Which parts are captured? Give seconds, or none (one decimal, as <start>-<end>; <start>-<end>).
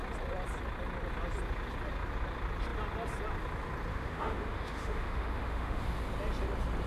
0.0-3.9; 5.9-6.9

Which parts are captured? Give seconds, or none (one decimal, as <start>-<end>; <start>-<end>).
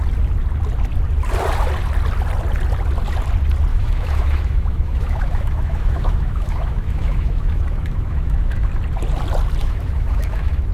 0.0-3.7; 8.7-9.6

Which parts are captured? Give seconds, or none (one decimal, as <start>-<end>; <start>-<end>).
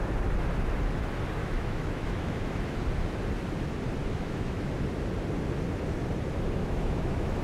0.0-1.4; 2.8-4.0; 4.7-6.6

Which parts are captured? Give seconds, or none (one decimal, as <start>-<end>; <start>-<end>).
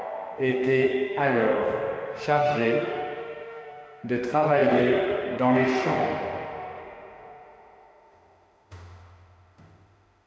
none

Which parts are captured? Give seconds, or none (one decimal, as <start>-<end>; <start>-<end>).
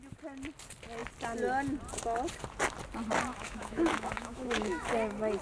0.0-3.3; 4.9-5.4